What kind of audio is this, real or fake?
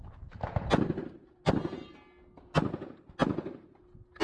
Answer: real